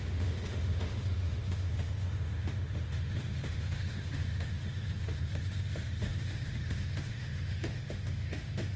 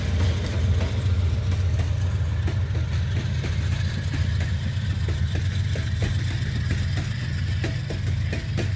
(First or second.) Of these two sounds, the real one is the second